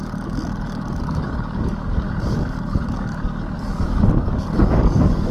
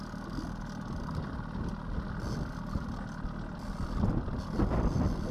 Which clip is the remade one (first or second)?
first